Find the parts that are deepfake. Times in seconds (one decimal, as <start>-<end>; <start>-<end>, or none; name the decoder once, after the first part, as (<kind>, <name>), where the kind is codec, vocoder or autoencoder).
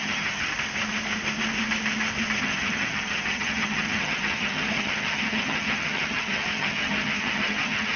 0.0-0.5 (vocoder, HiFi-GAN); 2.4-8.0